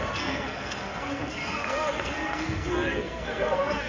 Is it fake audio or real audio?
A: fake